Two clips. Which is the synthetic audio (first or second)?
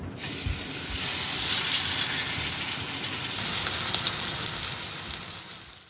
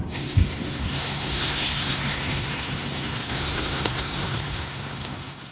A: second